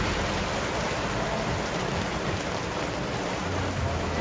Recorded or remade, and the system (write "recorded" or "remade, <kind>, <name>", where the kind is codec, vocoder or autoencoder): recorded